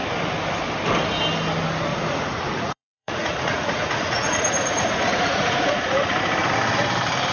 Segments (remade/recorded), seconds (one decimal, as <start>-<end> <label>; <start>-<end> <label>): 0.0-1.9 recorded; 1.9-6.2 remade; 6.2-7.3 recorded